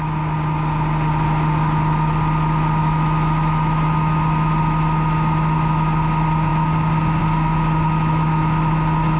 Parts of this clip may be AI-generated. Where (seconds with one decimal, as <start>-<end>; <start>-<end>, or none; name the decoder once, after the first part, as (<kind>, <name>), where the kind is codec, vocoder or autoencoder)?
none